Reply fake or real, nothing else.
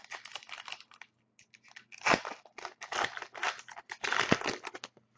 real